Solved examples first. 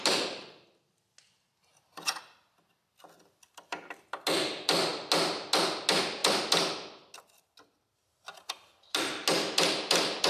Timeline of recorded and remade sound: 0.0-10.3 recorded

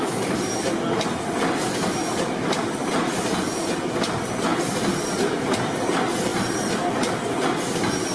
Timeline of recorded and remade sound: 0.0-8.1 recorded

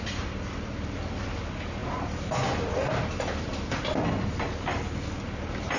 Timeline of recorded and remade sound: 0.0-5.8 recorded

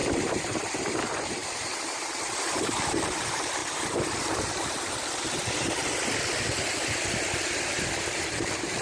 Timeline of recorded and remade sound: 0.0-5.8 remade; 5.8-8.0 recorded; 8.0-8.8 remade